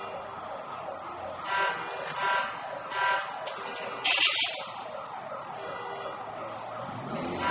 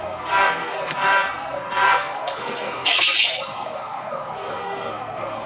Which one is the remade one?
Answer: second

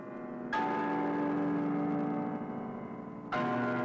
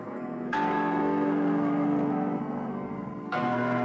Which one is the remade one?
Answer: second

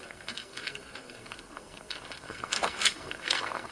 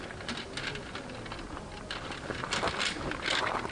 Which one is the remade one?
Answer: first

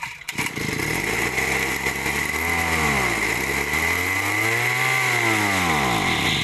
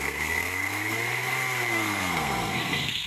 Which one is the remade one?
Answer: second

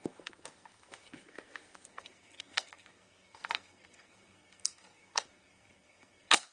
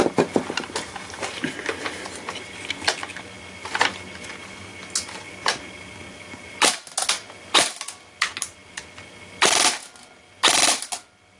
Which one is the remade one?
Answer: first